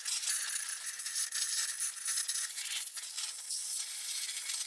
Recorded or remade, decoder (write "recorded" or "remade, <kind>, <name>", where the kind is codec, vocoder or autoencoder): recorded